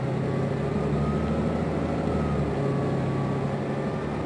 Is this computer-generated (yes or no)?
no